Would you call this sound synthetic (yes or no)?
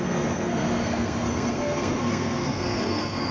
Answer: yes